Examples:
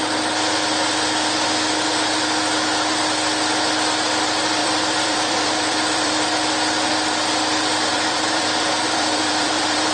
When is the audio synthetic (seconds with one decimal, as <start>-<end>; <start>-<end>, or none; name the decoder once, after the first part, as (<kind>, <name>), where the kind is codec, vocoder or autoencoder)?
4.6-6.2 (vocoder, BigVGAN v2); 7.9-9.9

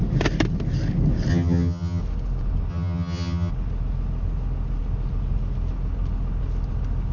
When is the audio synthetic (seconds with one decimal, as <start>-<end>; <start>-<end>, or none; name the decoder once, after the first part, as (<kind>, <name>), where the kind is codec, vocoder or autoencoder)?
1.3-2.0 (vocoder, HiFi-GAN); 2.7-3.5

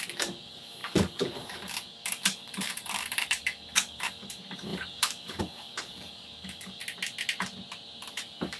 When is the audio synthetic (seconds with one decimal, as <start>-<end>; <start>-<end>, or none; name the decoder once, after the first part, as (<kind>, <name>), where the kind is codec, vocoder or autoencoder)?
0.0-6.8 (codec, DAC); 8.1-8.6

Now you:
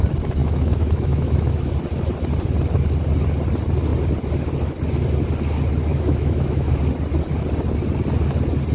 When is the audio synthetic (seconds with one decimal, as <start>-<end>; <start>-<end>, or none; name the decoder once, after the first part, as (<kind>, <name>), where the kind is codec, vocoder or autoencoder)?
0.4-1.7 (autoencoder, DAC-VAE); 5.9-6.7

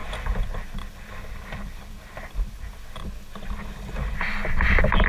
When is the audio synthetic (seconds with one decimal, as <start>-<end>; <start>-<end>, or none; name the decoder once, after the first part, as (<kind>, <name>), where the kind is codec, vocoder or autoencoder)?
0.0-2.5 (vocoder, BigVGAN v2)

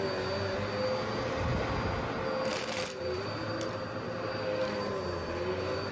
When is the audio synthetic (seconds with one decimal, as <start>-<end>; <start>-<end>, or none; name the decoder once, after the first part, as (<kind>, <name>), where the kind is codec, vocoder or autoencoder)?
2.5-3.2 (vocoder, BigVGAN v2)

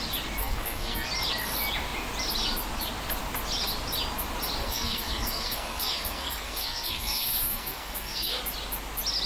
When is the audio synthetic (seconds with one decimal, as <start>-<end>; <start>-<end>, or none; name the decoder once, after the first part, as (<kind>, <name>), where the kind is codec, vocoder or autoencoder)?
0.4-1.1 (codec, SNAC); 4.6-8.4